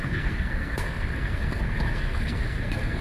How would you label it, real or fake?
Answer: fake